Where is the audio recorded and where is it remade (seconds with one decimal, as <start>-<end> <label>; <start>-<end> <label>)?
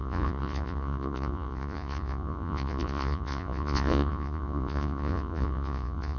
0.0-6.2 remade